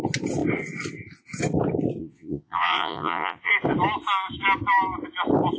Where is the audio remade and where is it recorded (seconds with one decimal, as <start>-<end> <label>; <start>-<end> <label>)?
0.0-2.0 recorded; 2.0-3.5 remade; 3.5-5.6 recorded